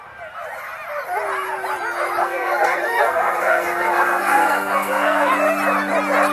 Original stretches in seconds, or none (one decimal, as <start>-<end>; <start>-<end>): 0.0-2.2; 5.3-6.3